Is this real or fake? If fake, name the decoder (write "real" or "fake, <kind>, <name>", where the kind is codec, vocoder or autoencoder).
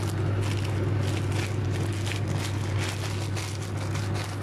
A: real